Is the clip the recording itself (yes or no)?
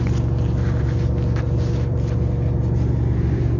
yes